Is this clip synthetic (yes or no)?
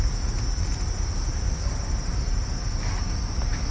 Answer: no